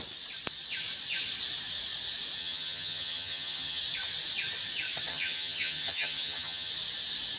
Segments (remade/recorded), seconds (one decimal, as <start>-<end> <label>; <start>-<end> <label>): 0.0-2.4 recorded; 2.4-3.8 remade; 3.8-5.1 recorded; 5.1-6.7 remade; 6.7-7.4 recorded